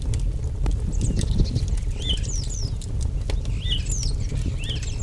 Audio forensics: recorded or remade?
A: recorded